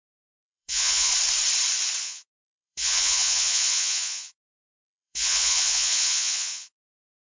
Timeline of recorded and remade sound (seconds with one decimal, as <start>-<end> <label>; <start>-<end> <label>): 0.0-1.1 remade; 1.1-2.0 recorded; 2.0-7.3 remade